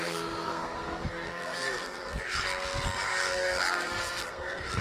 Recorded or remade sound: remade